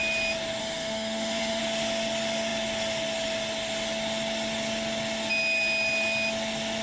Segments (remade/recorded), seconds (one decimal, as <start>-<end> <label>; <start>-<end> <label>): 0.0-0.6 recorded; 0.6-1.6 remade; 1.6-6.8 recorded